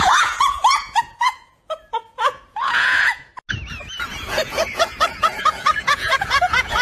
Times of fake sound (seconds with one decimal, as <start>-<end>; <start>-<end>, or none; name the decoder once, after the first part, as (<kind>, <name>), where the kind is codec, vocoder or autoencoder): 0.0-3.3 (vocoder, Vocos); 4.2-6.8